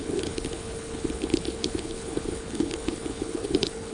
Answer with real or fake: fake